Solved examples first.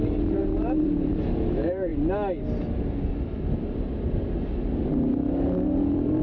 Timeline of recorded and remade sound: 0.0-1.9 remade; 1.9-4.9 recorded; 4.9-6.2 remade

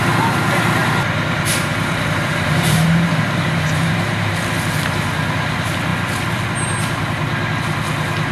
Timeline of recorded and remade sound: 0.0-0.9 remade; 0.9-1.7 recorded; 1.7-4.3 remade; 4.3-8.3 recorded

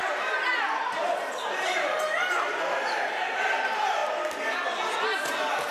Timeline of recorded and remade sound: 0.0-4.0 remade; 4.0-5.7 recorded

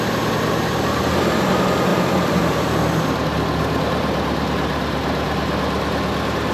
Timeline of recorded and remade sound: 0.0-1.9 recorded; 1.9-2.4 remade; 2.4-6.5 recorded

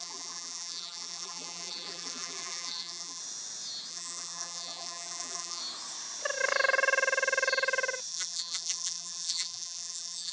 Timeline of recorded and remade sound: 0.0-3.2 remade; 3.2-3.9 recorded; 3.9-5.6 remade; 5.6-8.1 recorded; 8.1-10.3 remade